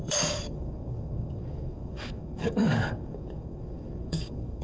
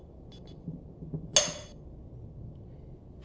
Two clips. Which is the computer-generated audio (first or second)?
first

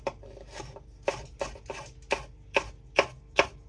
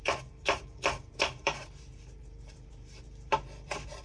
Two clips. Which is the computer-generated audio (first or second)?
second